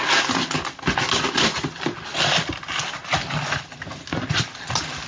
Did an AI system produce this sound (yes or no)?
no